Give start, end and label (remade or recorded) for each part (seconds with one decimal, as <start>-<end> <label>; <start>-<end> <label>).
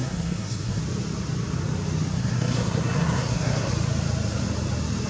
0.0-0.8 remade; 0.8-2.2 recorded; 2.2-3.7 remade; 3.7-5.1 recorded